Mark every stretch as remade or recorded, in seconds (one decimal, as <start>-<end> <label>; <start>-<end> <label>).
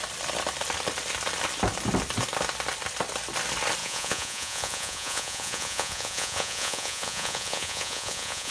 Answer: 0.0-3.8 recorded; 3.8-8.5 remade